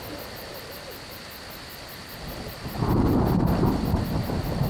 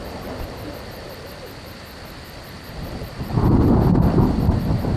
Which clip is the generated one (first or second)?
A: second